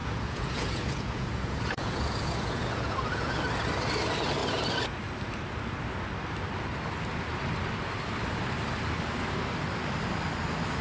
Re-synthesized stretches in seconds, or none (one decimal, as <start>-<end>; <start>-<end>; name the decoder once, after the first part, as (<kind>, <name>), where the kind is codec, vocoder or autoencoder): 0.0-3.4 (vocoder, Vocos)